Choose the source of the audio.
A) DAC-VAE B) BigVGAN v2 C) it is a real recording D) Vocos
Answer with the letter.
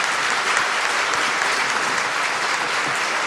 C